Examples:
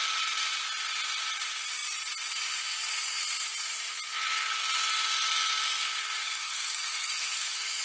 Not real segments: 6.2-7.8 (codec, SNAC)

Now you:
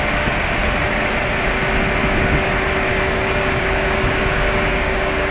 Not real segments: 2.0-2.5 (codec, DAC); 2.9-5.3